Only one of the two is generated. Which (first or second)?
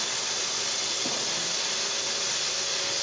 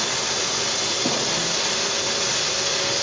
first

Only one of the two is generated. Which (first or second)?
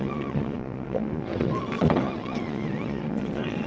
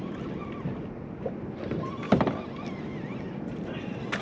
first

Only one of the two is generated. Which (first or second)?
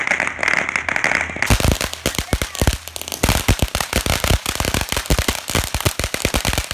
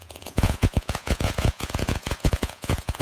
second